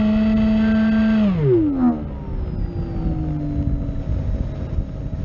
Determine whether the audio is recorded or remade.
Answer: recorded